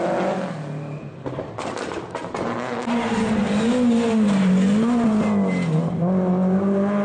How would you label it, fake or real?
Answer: real